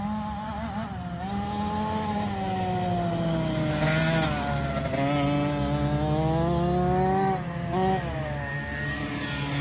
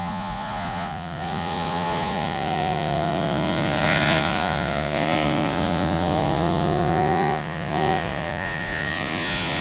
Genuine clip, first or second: first